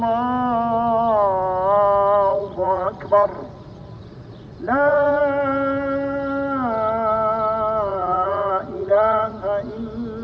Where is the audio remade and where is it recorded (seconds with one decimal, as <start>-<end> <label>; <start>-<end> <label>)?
0.0-2.3 recorded; 2.3-5.2 remade; 5.2-7.9 recorded; 7.9-9.4 remade; 9.4-10.2 recorded